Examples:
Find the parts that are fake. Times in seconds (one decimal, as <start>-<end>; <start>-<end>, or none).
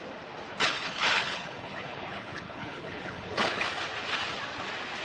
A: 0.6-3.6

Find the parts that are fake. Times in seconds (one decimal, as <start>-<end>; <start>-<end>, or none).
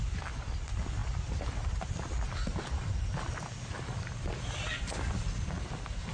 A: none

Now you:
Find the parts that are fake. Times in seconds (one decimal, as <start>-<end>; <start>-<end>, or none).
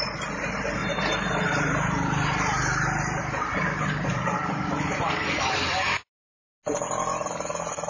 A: 0.8-3.2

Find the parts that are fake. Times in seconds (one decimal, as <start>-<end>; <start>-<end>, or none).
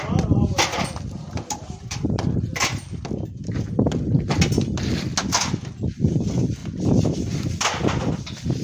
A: none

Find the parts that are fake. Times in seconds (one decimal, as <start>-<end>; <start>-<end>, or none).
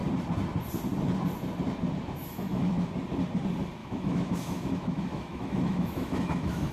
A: 2.2-2.9; 3.8-6.7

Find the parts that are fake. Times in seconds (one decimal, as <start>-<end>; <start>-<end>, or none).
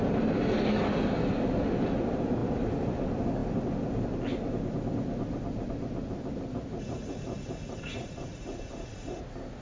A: 6.8-9.2